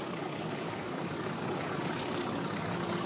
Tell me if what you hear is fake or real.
fake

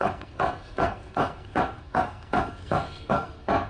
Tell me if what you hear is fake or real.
fake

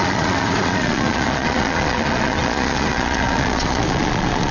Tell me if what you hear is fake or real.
fake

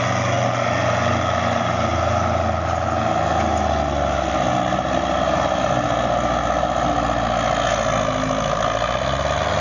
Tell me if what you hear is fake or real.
real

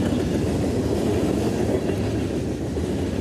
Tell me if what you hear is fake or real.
real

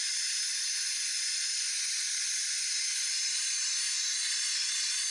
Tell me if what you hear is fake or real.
real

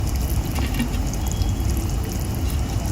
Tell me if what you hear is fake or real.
real